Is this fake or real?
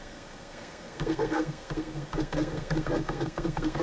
fake